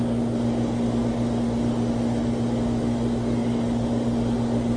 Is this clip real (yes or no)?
yes